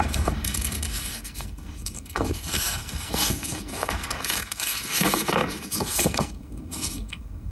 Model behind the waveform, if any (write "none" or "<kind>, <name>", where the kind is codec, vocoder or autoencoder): codec, SNAC